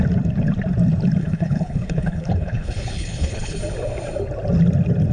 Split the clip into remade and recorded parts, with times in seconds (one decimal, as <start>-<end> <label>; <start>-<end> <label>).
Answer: 0.0-1.2 recorded; 1.2-3.6 remade; 3.6-5.1 recorded